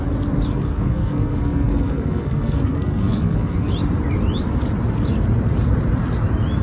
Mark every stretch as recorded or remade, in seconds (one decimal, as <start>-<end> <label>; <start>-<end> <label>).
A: 0.0-0.5 recorded; 0.5-3.7 remade; 3.7-6.6 recorded